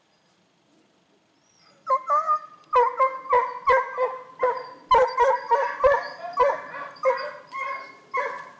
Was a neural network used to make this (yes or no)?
no